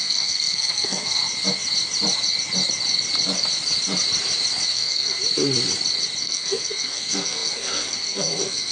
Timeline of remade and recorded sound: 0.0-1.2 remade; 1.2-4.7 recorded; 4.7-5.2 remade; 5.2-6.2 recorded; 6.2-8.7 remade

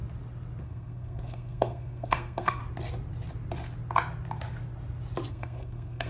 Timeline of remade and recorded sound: 0.0-0.6 recorded; 0.6-2.6 remade; 2.6-5.3 recorded; 5.3-6.1 remade

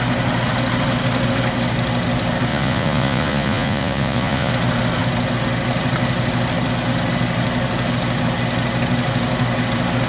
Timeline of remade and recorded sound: 0.0-2.5 recorded; 2.5-4.5 remade; 4.5-10.1 recorded

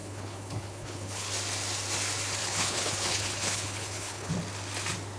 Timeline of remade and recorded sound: 0.0-1.3 remade; 1.3-2.4 recorded; 2.4-4.3 remade; 4.3-5.2 recorded